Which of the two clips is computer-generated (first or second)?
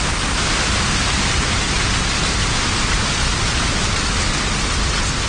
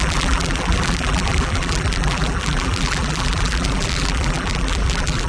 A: second